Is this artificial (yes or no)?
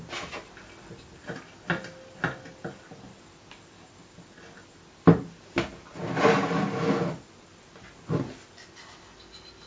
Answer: no